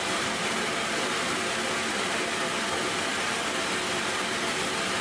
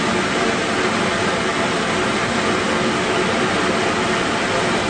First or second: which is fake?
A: first